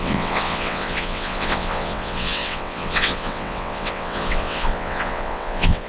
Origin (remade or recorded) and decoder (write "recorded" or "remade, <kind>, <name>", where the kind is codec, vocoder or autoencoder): remade, vocoder, WaveNeXt